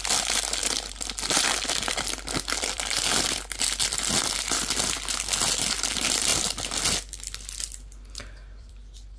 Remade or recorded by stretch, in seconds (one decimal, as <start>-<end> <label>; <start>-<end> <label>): 0.0-9.2 remade